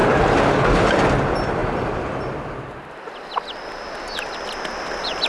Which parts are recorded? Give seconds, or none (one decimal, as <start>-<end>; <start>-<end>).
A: 0.0-1.6; 3.4-4.7